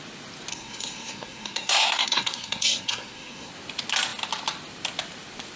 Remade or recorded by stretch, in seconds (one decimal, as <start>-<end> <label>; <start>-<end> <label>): 0.0-0.5 recorded; 0.5-3.5 remade; 3.5-5.6 recorded

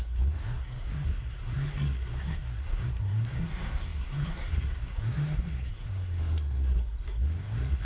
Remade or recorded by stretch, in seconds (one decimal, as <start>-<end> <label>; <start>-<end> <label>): 0.0-7.8 remade

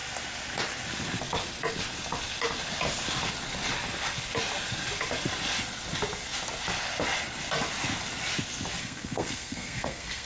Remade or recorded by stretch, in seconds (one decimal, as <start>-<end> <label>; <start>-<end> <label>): 0.0-8.8 recorded; 8.8-10.3 remade

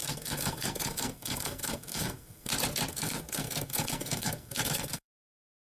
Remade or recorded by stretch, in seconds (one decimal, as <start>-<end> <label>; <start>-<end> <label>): 0.0-2.5 remade; 2.5-2.9 recorded; 2.9-5.7 remade

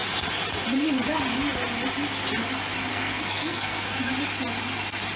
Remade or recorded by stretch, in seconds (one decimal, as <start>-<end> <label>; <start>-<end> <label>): 0.0-2.9 recorded; 2.9-4.1 remade; 4.1-5.2 recorded

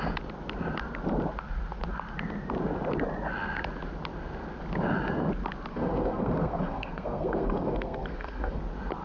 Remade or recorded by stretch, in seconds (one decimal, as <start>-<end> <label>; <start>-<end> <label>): 0.0-5.7 recorded; 5.7-8.6 remade; 8.6-9.0 recorded